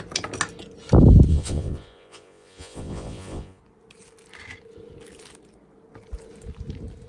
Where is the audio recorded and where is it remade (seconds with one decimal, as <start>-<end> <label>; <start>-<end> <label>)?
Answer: 0.0-1.3 recorded; 1.3-3.6 remade; 3.6-7.1 recorded